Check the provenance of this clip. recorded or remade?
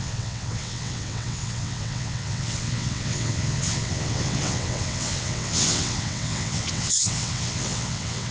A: remade